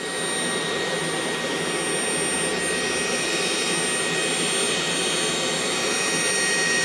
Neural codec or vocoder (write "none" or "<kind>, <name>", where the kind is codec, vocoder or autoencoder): none